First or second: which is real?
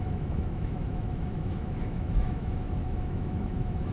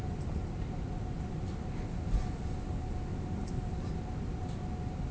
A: second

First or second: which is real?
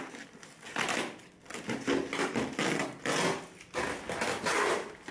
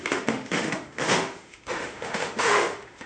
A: first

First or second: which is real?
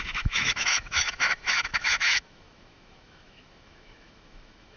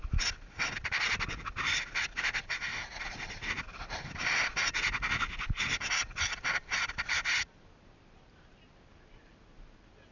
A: second